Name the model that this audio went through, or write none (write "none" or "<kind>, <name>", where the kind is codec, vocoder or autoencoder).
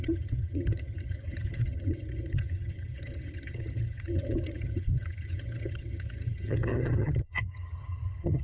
vocoder, HiFi-GAN